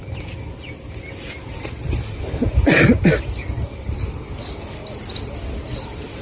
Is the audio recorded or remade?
recorded